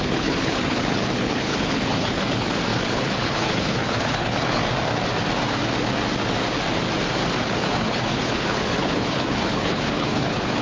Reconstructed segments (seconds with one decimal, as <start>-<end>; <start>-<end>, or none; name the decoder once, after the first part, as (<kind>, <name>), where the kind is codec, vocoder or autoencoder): 0.0-4.6 (codec, HILCodec); 7.4-10.6